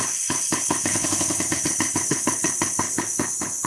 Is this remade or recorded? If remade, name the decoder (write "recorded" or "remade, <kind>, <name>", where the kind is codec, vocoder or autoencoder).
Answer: remade, codec, HILCodec